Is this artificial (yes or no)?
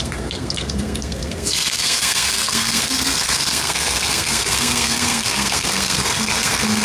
yes